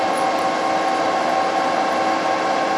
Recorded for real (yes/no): yes